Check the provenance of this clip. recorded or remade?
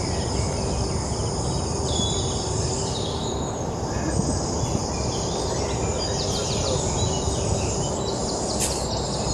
recorded